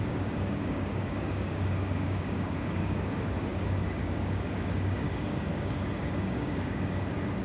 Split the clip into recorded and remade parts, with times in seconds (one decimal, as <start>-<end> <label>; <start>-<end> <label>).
0.0-7.4 remade

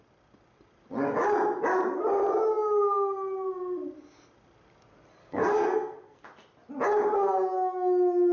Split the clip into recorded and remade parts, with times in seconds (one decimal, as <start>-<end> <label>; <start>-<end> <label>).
0.0-5.2 recorded; 5.2-6.2 remade; 6.2-8.3 recorded

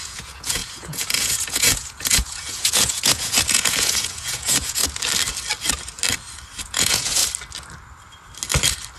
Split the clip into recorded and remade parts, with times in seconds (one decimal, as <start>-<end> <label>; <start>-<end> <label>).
0.0-4.8 remade; 4.8-6.6 recorded; 6.6-7.2 remade; 7.2-9.0 recorded

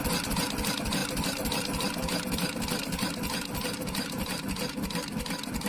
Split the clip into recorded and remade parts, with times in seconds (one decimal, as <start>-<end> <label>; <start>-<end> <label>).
0.0-5.7 recorded

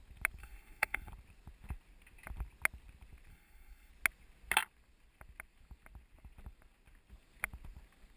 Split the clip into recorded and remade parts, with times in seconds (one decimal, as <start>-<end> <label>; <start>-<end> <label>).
0.0-0.4 recorded; 0.4-1.1 remade; 1.1-3.3 recorded; 3.3-3.9 remade; 3.9-8.2 recorded

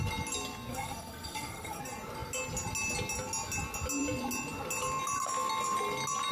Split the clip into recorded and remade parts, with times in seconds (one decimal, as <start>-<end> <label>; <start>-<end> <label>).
0.0-0.7 recorded; 0.7-1.8 remade; 1.8-6.3 recorded

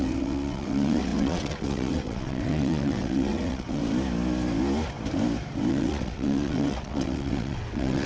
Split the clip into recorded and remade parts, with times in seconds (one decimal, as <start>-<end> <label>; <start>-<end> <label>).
0.0-3.8 remade; 3.8-5.7 recorded; 5.7-8.1 remade